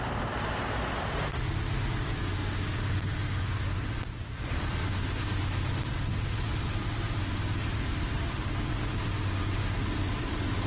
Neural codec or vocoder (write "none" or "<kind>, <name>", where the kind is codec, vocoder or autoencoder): none